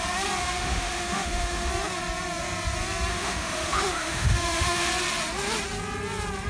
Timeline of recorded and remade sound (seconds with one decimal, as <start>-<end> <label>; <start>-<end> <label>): 0.0-0.4 recorded; 0.4-1.7 remade; 1.7-3.1 recorded; 3.1-4.9 remade; 4.9-6.5 recorded